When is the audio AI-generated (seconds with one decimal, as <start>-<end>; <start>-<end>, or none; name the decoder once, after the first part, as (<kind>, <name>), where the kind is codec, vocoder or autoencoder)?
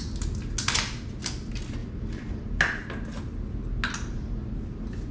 none